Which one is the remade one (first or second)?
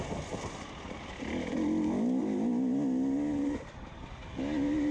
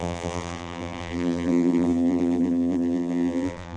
second